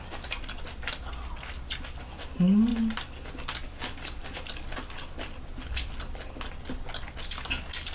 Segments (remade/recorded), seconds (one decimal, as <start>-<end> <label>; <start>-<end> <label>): 0.0-7.9 recorded